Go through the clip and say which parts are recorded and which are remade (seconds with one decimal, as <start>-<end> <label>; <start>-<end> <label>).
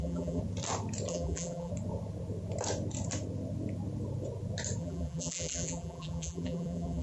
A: 0.0-0.4 remade; 0.4-1.1 recorded; 1.1-1.7 remade; 1.7-4.8 recorded; 4.8-7.0 remade